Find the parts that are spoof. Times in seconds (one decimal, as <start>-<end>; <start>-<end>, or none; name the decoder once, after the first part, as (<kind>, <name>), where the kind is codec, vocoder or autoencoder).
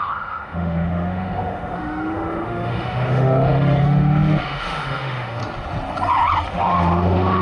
0.0-5.4 (autoencoder, DAC-VAE); 6.5-7.4